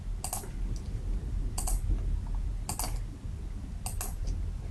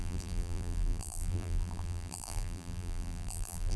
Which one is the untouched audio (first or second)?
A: first